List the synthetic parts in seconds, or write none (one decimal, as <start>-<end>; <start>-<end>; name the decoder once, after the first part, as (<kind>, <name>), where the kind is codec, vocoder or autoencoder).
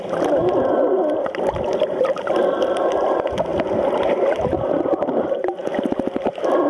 none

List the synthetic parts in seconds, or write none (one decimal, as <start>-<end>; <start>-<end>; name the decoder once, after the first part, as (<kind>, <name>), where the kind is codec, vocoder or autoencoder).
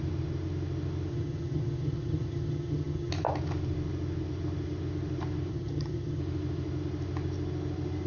1.1-3.1 (vocoder, HiFi-GAN); 5.5-6.2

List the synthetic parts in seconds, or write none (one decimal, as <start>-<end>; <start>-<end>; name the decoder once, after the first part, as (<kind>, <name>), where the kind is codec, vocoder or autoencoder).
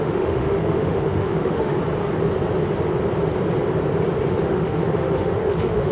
0.0-1.7 (autoencoder, DAC-VAE); 4.3-5.9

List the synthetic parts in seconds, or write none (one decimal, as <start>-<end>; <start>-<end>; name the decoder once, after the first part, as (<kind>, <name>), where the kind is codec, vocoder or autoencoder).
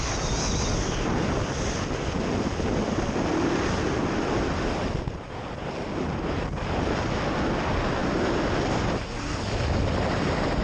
none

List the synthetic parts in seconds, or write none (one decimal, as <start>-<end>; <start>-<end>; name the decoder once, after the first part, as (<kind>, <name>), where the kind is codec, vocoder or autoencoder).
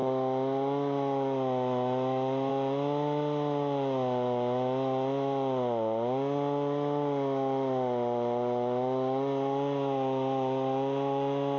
none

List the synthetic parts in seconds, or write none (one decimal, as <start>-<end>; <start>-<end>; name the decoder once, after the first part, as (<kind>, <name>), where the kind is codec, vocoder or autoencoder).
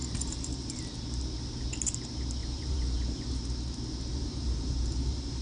0.0-0.8 (vocoder, BigVGAN v2); 2.4-3.4; 4.1-5.4